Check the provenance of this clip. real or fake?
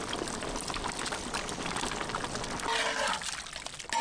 real